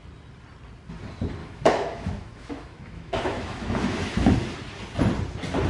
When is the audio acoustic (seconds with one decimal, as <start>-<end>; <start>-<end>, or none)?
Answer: 0.0-1.4; 4.3-5.7